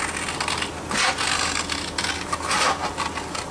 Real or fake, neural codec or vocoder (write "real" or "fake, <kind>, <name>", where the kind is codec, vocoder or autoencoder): real